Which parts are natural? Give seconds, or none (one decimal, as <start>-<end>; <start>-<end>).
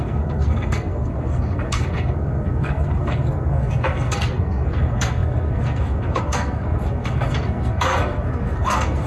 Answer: none